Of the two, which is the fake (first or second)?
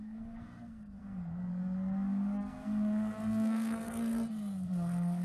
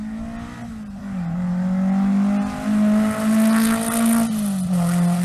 first